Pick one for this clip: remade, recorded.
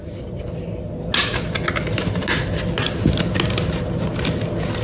recorded